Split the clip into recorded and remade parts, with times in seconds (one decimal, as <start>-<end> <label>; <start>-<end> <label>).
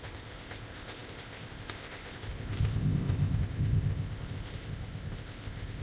0.0-5.8 remade